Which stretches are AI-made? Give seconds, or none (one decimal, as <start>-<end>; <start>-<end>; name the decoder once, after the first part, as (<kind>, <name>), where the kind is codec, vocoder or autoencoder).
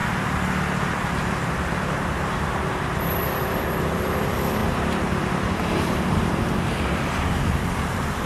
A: 0.9-8.3 (vocoder, BigVGAN v2)